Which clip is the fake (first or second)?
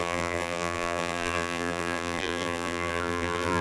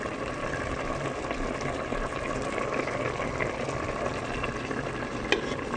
first